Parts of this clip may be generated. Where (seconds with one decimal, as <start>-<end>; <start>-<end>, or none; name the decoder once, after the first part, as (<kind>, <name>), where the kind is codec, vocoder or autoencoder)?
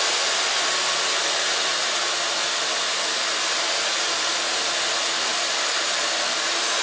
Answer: 5.3-6.8 (vocoder, BigVGAN v2)